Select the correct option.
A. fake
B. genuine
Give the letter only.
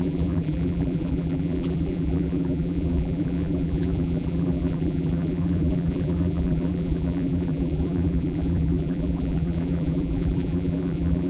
A